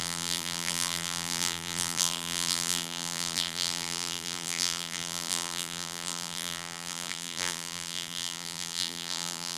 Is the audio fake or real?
fake